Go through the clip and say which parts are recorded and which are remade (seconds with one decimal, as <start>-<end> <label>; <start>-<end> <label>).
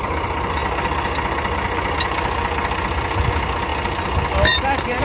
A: 0.0-5.0 recorded